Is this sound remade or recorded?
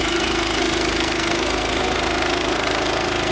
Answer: remade